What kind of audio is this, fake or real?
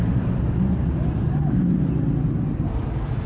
fake